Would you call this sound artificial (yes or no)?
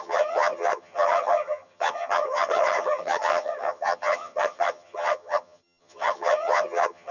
yes